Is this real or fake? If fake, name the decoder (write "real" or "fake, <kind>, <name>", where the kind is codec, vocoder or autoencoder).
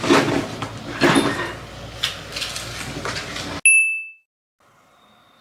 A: real